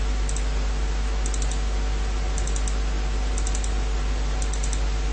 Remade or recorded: recorded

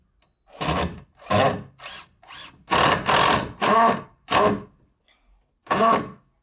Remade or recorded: recorded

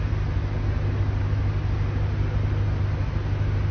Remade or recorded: recorded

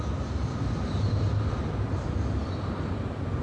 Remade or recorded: recorded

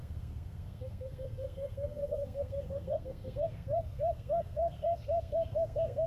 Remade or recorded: remade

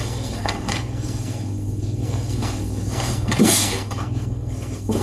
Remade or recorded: remade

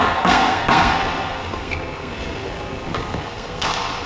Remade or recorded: remade